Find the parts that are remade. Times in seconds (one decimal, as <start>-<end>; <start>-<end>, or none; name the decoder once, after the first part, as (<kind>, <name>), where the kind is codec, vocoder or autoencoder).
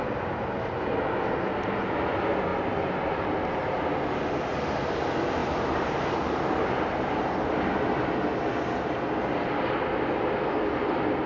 none